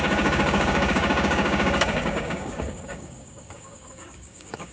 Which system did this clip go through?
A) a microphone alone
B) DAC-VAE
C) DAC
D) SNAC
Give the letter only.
C